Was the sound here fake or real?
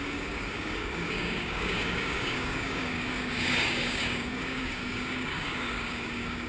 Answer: fake